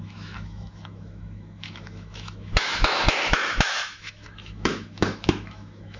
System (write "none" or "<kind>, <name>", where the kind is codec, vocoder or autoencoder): autoencoder, DAC-VAE